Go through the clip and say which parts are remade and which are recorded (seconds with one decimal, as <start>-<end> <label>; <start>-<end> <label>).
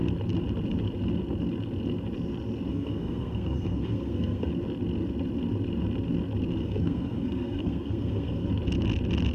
0.0-2.7 recorded; 2.7-4.5 remade; 4.5-6.6 recorded; 6.6-8.5 remade; 8.5-9.3 recorded